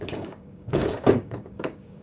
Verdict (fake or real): fake